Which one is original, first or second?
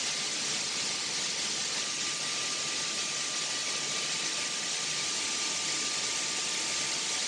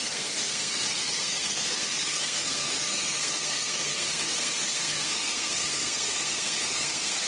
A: first